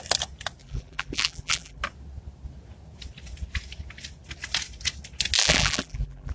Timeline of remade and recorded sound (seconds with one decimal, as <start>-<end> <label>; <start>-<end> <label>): 0.0-0.6 recorded; 0.6-1.8 remade; 1.8-5.4 recorded; 5.4-6.3 remade